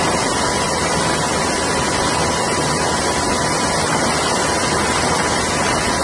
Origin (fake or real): real